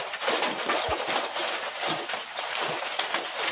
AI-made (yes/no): no